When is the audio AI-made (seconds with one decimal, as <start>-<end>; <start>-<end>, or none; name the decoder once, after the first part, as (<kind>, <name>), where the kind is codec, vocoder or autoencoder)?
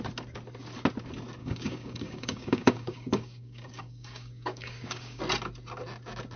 1.4-5.2 (codec, DAC)